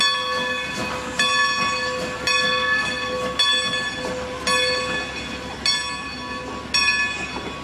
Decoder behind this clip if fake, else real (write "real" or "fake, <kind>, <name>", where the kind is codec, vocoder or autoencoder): real